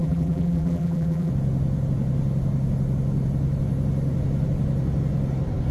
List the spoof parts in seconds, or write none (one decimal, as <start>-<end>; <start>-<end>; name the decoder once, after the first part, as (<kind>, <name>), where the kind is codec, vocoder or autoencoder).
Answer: 0.0-1.3 (vocoder, BigVGAN v2)